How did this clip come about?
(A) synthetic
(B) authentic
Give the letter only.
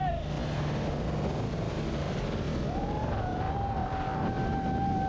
B